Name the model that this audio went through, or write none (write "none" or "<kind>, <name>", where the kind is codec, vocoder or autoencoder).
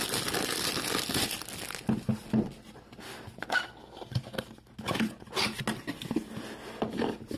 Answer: none